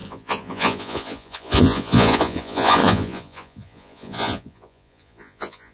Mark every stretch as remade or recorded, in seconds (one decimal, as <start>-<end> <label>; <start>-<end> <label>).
0.0-5.7 remade